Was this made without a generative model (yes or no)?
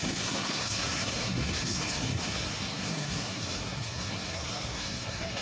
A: no